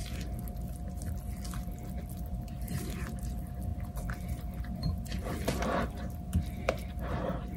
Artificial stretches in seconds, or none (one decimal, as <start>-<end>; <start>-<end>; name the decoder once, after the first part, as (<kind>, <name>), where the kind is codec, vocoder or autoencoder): none